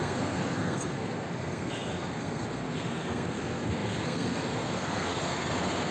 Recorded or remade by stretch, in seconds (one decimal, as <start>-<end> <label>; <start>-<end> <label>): 0.0-5.9 remade

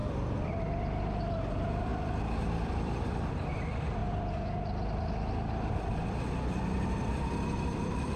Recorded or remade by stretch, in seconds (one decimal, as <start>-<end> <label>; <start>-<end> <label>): 0.0-4.0 remade; 4.0-6.1 recorded; 6.1-8.2 remade

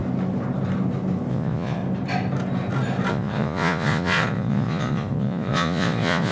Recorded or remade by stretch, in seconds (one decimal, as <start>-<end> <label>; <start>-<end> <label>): 0.0-1.3 recorded; 1.3-1.8 remade; 1.8-3.1 recorded; 3.1-6.3 remade

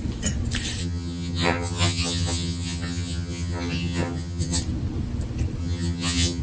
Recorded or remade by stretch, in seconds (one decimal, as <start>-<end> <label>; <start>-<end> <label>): 0.0-0.8 recorded; 0.8-4.6 remade; 4.6-5.6 recorded; 5.6-6.4 remade

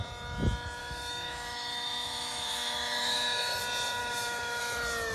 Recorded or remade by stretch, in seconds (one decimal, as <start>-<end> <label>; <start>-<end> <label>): 0.0-0.8 recorded; 0.8-3.6 remade; 3.6-4.0 recorded; 4.0-4.6 remade; 4.6-5.1 recorded

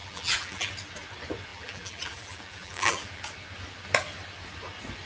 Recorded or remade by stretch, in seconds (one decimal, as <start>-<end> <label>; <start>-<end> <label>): 0.0-0.7 remade; 0.7-1.5 recorded; 1.5-3.2 remade; 3.2-5.1 recorded

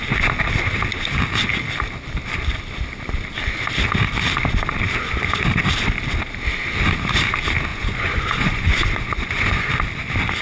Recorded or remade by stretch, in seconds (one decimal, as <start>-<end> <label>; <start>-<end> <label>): 0.0-7.7 recorded; 7.7-9.7 remade; 9.7-10.4 recorded

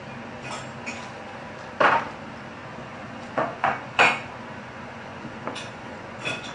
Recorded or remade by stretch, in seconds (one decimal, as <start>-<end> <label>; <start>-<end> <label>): 0.0-2.6 recorded; 2.6-6.5 remade